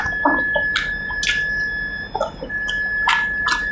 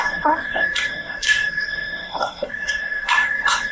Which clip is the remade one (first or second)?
second